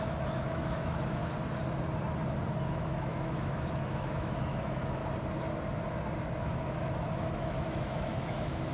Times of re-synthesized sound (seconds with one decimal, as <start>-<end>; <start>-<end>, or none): 0.0-1.2; 2.7-5.0; 6.4-8.7